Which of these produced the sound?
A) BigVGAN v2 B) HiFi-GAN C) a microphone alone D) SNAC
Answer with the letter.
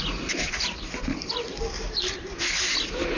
C